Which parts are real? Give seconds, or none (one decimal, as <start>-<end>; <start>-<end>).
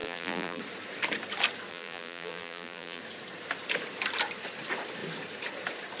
0.6-1.7; 3.0-6.0